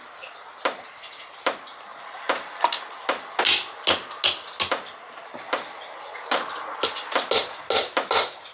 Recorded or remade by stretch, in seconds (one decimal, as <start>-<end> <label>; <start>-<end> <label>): 0.0-8.5 recorded